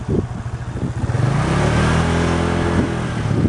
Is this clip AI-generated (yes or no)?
no